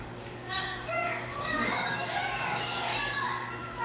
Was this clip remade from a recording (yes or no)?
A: yes